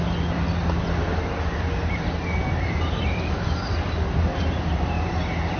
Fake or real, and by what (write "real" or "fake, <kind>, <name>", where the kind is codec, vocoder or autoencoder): real